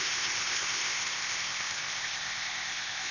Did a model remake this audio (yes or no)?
yes